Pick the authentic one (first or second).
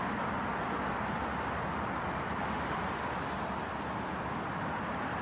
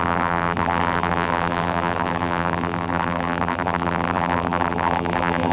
first